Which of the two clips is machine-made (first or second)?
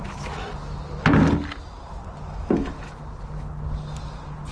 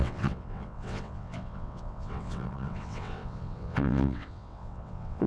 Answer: second